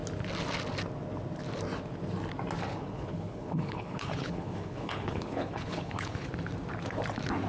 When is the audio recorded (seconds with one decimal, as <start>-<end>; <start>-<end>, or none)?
0.0-2.7; 6.3-7.5